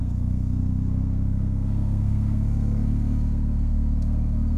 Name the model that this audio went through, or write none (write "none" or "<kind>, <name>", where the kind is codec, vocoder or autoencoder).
codec, SNAC